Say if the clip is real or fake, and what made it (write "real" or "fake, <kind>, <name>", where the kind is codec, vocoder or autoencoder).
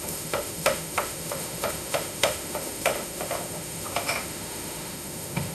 fake, autoencoder, DAC-VAE